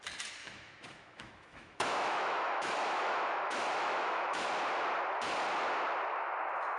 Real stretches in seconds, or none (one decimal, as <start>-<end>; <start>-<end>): 0.0-0.4; 4.5-6.8